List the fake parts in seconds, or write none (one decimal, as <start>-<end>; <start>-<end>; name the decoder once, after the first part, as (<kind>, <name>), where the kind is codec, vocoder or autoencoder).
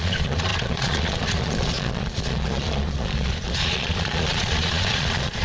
0.0-5.4 (vocoder, Vocos)